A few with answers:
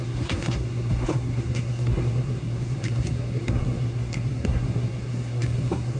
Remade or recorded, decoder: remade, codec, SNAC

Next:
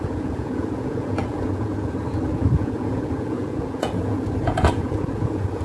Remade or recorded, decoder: remade, vocoder, Vocos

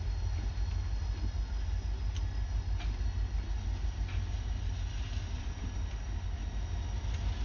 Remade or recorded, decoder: recorded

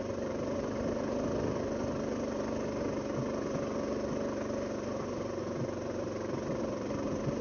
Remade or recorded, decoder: recorded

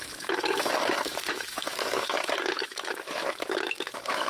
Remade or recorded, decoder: remade, autoencoder, DAC-VAE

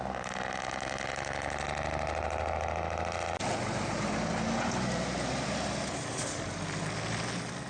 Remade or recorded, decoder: recorded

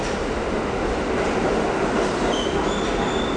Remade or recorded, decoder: recorded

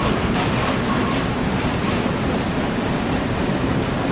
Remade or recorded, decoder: remade, vocoder, BigVGAN v2